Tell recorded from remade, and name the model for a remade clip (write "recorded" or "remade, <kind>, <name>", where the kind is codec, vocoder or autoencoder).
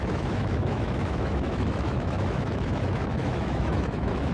remade, autoencoder, DAC-VAE